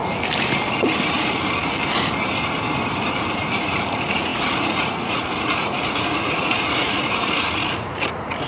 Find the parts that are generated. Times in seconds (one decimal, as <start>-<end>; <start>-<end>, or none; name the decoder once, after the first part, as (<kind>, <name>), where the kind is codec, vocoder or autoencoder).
3.6-8.5 (vocoder, Vocos)